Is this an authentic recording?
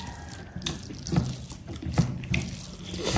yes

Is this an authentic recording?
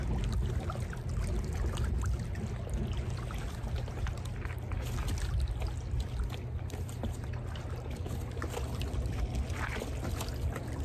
yes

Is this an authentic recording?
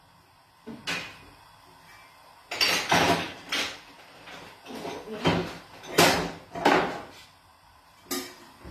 yes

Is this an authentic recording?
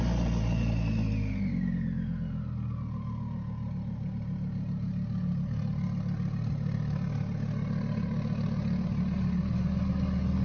yes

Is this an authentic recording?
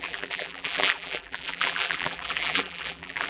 no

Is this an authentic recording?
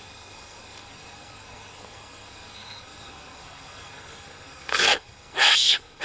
no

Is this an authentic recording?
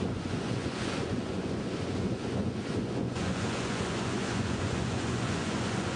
no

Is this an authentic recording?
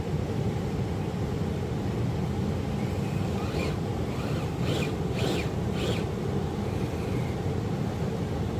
yes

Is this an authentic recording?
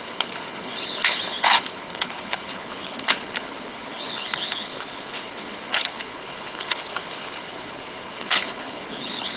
no